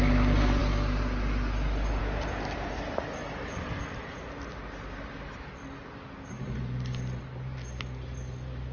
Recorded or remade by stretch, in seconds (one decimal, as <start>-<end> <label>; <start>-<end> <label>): 0.0-8.7 recorded